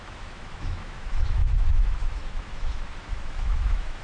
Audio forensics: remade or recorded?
remade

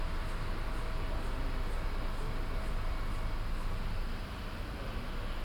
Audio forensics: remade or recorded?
recorded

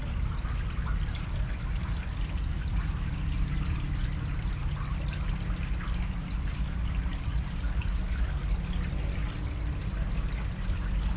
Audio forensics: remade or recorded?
recorded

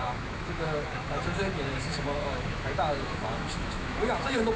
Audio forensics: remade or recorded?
remade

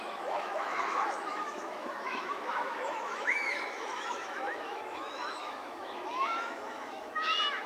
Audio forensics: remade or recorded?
remade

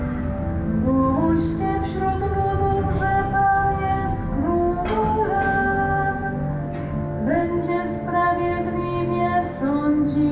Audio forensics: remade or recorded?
recorded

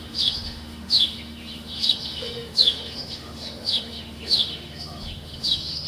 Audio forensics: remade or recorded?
remade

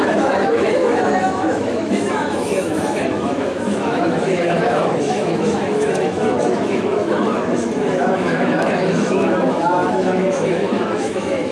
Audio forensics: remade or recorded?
remade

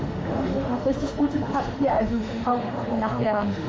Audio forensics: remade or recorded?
remade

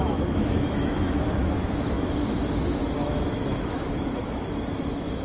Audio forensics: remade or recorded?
remade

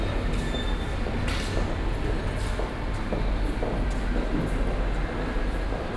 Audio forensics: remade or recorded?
recorded